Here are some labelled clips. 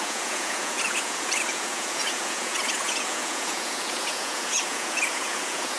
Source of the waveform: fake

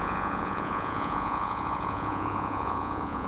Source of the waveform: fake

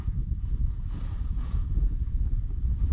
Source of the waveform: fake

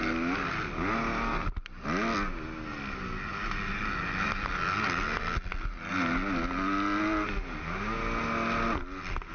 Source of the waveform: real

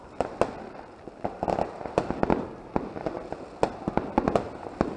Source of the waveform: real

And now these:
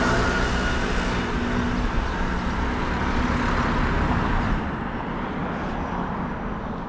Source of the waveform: real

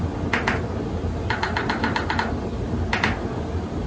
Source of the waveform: real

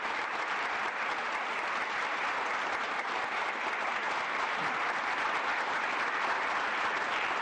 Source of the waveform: real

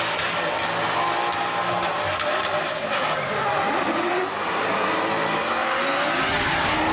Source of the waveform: real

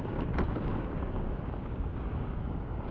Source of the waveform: fake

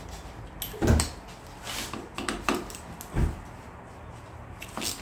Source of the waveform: real